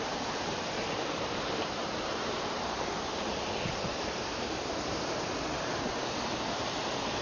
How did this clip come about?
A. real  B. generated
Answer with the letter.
B